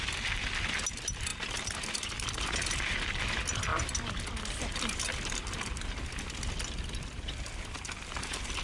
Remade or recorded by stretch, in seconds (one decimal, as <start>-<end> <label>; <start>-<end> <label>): 0.0-8.6 recorded